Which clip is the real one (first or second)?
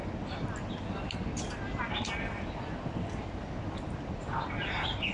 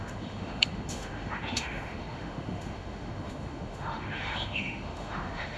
first